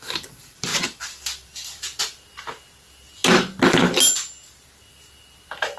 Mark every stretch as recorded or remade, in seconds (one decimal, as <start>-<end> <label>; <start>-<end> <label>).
0.0-5.8 recorded